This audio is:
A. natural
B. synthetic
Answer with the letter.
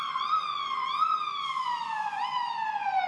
B